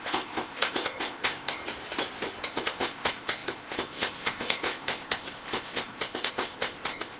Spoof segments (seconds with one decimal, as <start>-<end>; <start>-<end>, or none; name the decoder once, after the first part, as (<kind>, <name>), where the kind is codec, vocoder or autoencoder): 0.0-1.6 (codec, ZipCodec); 2.4-7.2